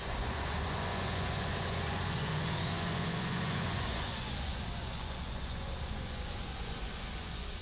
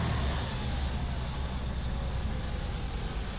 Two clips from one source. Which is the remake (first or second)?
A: first